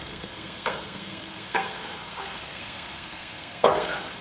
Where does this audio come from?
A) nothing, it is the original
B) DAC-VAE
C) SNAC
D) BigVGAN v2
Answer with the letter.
C